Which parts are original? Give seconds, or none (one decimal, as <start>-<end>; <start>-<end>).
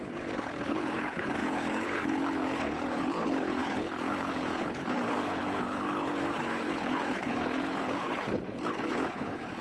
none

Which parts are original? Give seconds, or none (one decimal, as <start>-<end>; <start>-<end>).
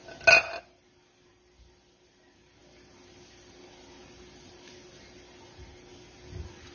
0.0-6.7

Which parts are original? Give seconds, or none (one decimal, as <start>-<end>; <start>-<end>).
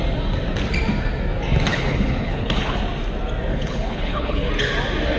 0.0-1.7; 2.8-3.5; 4.5-5.2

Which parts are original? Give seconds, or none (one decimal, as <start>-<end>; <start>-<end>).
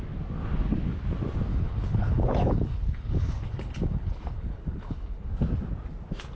0.0-1.5; 5.3-6.3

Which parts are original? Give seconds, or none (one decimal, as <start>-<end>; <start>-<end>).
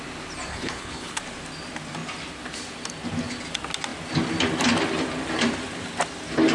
0.0-0.5; 1.2-6.5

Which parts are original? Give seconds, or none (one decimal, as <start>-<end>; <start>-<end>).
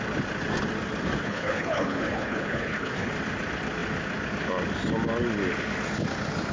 0.0-1.2; 3.1-6.5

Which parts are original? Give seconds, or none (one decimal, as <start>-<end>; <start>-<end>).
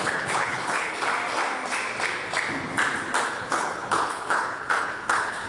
1.1-3.3